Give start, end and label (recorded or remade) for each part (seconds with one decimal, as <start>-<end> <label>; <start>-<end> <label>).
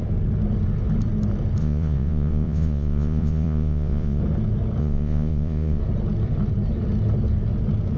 0.0-1.6 recorded; 1.6-4.2 remade; 4.2-4.8 recorded; 4.8-5.8 remade; 5.8-8.0 recorded